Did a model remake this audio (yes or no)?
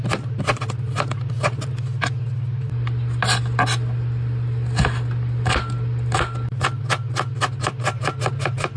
no